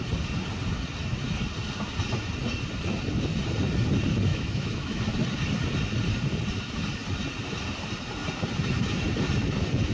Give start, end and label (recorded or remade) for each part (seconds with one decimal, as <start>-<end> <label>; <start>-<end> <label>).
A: 0.0-4.3 recorded; 4.3-5.0 remade; 5.0-9.9 recorded